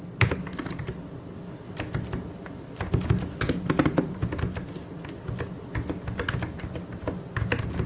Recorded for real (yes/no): yes